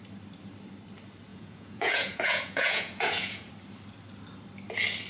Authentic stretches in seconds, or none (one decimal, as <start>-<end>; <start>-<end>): 0.0-1.3; 3.5-5.1